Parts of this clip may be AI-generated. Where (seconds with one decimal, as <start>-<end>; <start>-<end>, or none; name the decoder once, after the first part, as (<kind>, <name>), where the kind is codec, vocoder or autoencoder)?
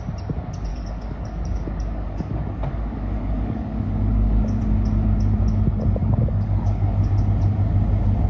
0.7-4.6 (codec, DAC); 6.0-7.1